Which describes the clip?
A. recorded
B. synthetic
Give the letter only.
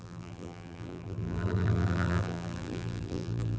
B